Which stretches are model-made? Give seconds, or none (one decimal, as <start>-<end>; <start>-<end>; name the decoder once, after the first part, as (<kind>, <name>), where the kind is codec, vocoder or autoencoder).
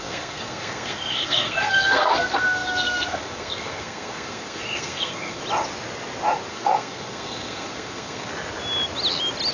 0.0-5.4 (codec, SNAC); 6.5-8.3